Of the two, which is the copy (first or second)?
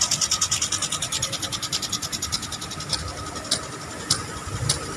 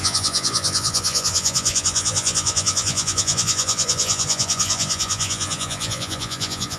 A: second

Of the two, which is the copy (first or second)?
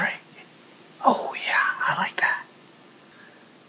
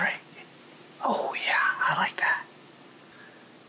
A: first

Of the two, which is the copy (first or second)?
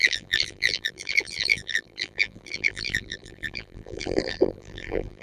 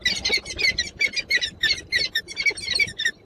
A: first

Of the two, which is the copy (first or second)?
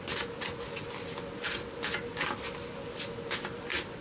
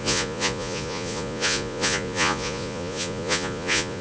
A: second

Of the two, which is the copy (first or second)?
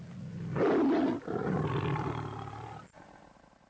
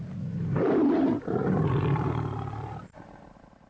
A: second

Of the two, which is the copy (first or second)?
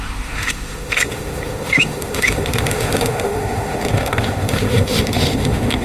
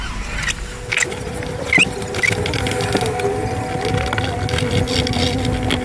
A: first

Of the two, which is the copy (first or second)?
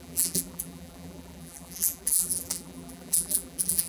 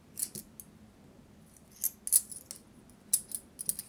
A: first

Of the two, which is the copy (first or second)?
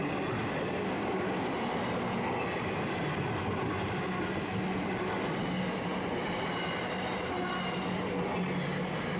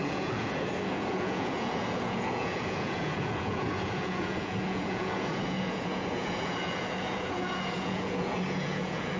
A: second